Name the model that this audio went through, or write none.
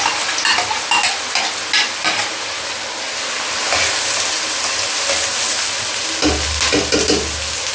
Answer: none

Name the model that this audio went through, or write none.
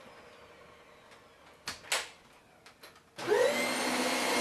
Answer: none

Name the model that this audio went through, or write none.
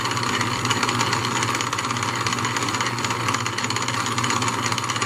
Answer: none